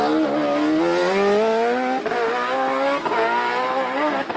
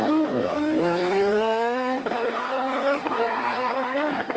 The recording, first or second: first